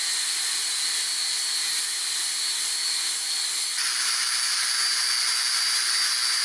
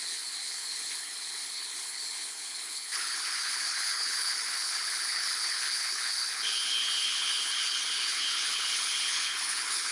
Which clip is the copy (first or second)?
second